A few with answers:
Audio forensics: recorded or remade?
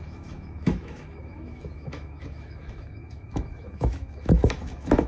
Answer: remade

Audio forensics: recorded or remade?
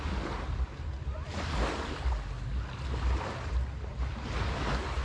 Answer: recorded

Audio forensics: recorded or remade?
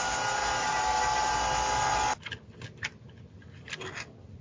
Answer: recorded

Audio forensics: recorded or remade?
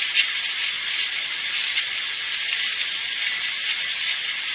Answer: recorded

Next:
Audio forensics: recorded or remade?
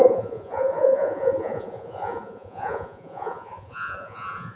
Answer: remade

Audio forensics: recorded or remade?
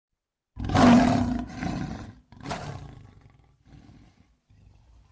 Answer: recorded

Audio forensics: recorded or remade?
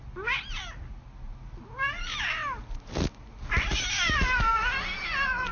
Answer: recorded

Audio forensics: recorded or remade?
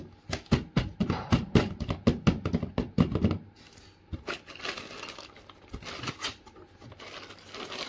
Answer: recorded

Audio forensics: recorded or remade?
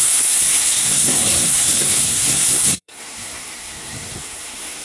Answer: remade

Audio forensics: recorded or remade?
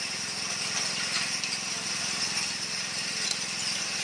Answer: recorded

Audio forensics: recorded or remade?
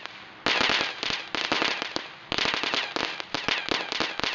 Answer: recorded